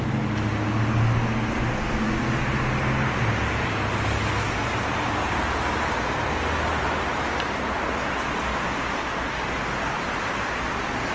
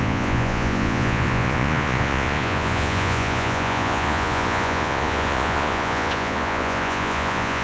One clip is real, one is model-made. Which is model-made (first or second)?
second